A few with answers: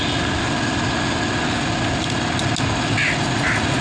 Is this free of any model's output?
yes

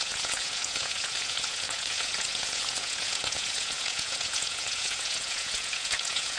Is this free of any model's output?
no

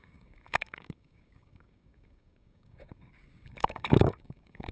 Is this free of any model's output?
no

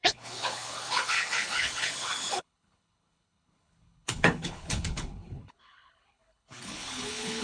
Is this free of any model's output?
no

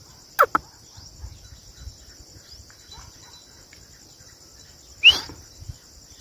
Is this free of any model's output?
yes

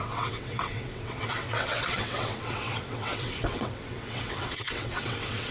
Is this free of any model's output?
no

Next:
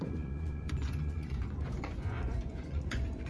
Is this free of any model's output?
no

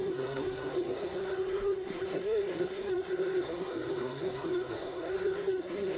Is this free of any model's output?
no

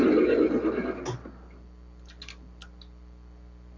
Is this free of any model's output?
yes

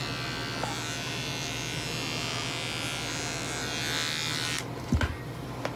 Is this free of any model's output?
yes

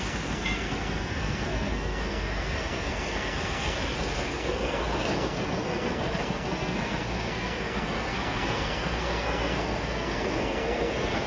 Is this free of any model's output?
no